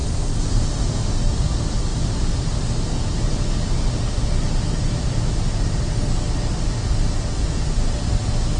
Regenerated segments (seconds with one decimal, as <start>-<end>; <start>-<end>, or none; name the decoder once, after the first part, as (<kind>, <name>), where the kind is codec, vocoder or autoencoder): none